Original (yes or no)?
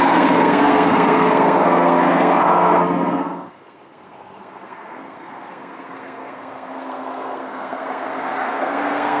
no